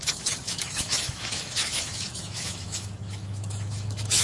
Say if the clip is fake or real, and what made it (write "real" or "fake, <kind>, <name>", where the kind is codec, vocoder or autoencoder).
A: fake, autoencoder, DAC-VAE